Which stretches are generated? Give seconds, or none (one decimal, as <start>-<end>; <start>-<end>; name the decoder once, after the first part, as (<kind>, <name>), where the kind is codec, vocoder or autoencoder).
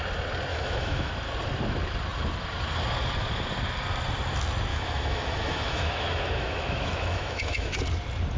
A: 0.5-1.1 (autoencoder, DAC-VAE); 4.7-7.8